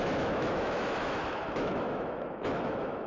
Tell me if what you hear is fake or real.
fake